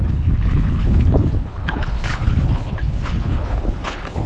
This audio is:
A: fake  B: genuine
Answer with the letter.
A